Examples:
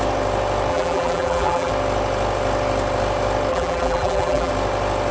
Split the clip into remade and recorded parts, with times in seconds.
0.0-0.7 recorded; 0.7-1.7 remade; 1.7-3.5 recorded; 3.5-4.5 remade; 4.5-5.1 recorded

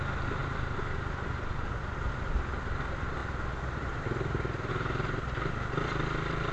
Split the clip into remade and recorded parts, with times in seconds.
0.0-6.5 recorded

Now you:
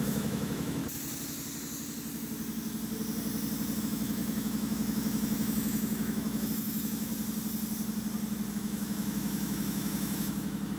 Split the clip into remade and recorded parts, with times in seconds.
0.0-0.8 remade; 0.8-3.8 recorded; 3.8-7.1 remade; 7.1-8.5 recorded; 8.5-10.8 remade